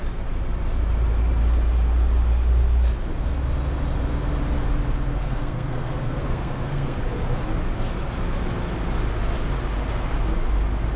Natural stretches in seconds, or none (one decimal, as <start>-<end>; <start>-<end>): 0.0-5.2; 7.0-11.0